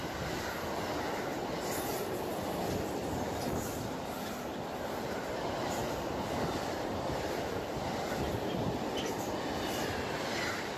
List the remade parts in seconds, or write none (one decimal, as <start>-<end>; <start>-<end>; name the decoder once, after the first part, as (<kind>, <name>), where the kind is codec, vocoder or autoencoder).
5.8-9.3 (vocoder, BigVGAN v2)